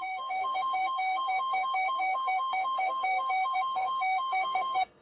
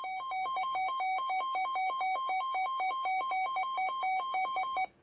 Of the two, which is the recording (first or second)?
second